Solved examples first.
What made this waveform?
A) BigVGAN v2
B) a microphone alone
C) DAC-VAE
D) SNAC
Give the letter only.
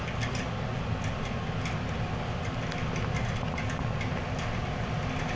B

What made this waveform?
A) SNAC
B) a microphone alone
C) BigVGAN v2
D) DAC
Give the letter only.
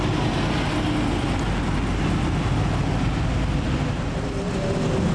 B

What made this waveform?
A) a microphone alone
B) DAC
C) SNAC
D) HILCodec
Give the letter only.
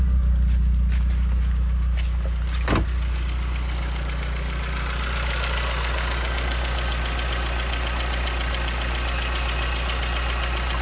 A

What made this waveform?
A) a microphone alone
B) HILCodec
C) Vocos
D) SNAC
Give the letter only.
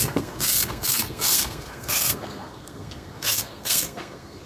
D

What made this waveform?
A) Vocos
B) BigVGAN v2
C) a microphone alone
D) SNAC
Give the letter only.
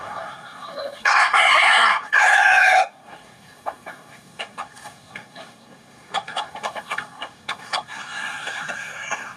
D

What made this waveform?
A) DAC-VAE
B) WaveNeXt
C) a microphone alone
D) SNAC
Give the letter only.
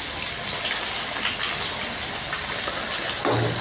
C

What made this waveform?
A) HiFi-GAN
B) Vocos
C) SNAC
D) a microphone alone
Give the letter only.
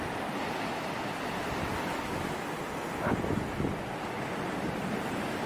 D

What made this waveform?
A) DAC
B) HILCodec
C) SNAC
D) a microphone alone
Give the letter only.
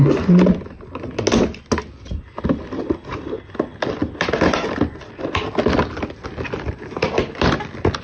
D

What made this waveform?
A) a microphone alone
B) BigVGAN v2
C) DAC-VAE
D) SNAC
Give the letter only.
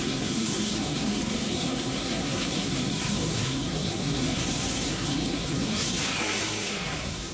D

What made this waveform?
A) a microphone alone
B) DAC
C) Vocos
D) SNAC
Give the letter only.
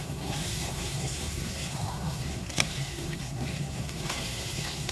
D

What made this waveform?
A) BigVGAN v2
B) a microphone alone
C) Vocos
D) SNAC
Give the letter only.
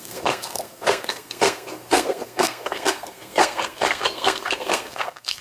D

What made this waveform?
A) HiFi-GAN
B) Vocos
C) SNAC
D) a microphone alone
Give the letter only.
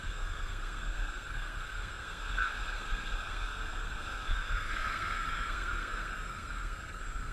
C